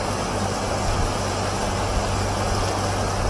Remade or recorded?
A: recorded